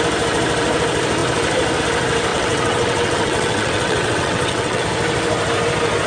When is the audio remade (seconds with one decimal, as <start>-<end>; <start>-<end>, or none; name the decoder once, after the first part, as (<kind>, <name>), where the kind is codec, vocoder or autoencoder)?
2.3-4.8 (vocoder, WaveNeXt)